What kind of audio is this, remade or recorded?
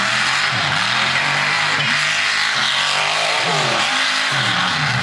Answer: remade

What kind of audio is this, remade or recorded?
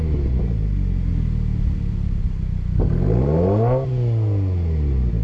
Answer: recorded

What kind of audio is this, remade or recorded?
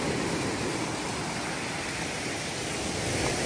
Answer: recorded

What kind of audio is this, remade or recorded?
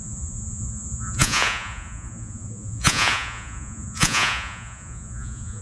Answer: remade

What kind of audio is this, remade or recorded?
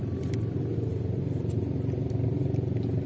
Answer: recorded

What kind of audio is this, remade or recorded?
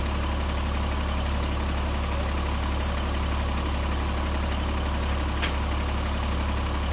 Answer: recorded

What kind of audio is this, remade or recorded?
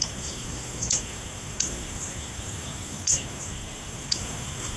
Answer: remade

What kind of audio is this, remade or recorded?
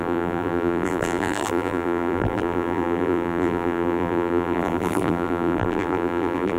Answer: remade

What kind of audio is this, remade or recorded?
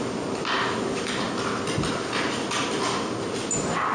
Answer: recorded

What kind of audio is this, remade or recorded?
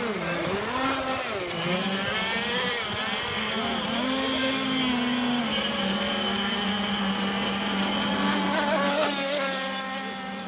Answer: recorded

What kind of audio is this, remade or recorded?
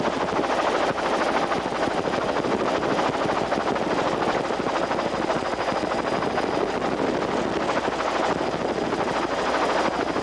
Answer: recorded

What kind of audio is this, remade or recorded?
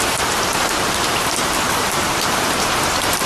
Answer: remade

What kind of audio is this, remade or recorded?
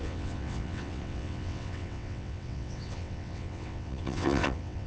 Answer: remade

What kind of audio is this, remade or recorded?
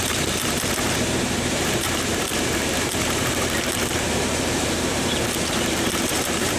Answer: remade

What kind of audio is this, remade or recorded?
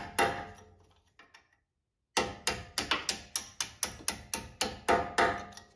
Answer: recorded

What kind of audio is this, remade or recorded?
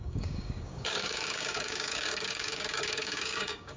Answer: remade